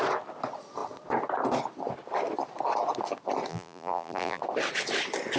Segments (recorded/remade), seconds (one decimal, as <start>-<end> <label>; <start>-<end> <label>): 0.0-3.5 recorded; 3.5-4.4 remade; 4.4-5.4 recorded